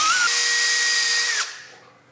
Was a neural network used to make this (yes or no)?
no